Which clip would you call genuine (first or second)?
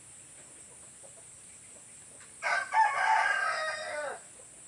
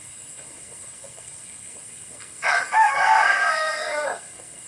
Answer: first